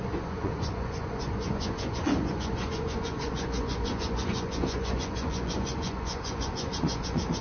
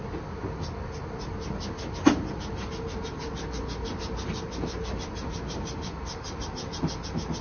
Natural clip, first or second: second